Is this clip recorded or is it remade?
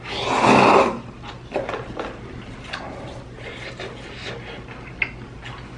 recorded